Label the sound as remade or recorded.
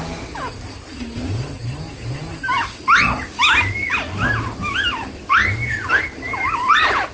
recorded